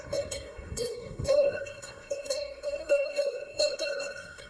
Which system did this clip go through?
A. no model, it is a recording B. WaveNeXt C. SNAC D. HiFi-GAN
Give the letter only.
C